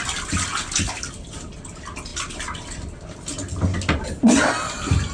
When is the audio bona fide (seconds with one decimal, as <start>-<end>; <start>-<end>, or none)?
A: 0.5-1.0; 2.1-4.0